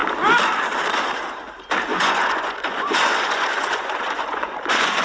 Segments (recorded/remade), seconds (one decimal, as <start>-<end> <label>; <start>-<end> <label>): 0.0-1.9 recorded; 1.9-5.0 remade